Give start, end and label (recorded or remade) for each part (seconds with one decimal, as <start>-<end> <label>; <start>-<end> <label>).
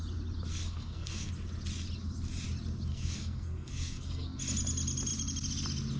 0.0-0.5 recorded; 0.5-1.3 remade; 1.3-2.9 recorded; 2.9-4.4 remade; 4.4-6.0 recorded